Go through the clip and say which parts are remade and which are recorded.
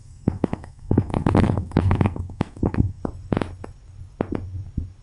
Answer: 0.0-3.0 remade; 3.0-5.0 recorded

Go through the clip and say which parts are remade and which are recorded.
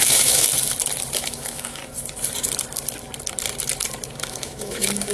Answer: 0.0-0.5 remade; 0.5-1.2 recorded; 1.2-1.8 remade; 1.8-4.2 recorded; 4.2-5.1 remade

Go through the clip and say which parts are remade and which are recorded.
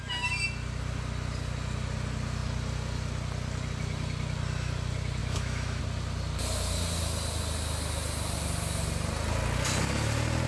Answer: 0.0-5.2 recorded; 5.2-5.8 remade; 5.8-10.5 recorded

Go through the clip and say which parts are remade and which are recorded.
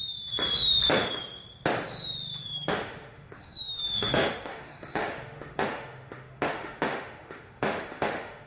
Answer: 0.0-2.4 recorded; 2.4-8.5 remade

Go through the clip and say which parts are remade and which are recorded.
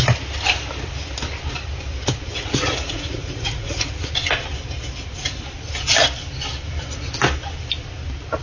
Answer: 0.0-2.3 recorded; 2.3-4.1 remade; 4.1-8.4 recorded